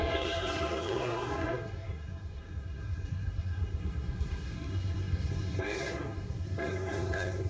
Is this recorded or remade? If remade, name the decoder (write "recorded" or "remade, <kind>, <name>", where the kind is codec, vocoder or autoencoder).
remade, codec, SNAC